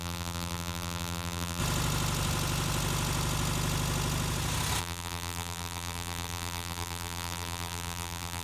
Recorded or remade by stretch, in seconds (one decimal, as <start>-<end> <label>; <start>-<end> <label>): 0.0-1.6 remade; 1.6-4.8 recorded; 4.8-8.4 remade